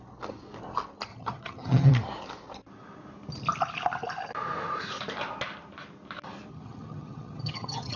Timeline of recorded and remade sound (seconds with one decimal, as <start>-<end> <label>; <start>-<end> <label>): 0.0-1.1 recorded; 1.1-1.9 remade; 1.9-6.5 recorded; 6.5-8.0 remade